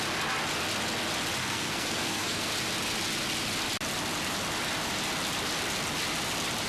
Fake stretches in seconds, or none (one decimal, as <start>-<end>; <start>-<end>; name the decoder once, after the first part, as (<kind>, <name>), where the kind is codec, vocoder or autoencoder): 1.4-2.5 (codec, SNAC)